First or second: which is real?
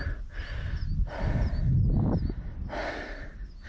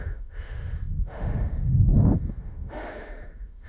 first